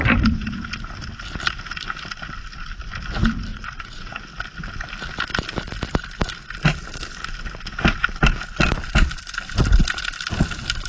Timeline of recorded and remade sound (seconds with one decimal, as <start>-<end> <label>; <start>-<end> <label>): 0.0-3.5 recorded; 3.5-4.2 remade; 4.2-10.9 recorded

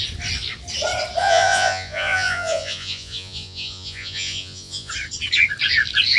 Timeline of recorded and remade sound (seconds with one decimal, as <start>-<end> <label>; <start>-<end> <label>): 0.0-1.2 recorded; 1.2-4.9 remade; 4.9-6.2 recorded

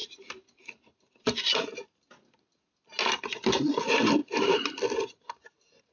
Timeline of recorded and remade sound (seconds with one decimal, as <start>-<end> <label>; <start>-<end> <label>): 0.0-5.9 recorded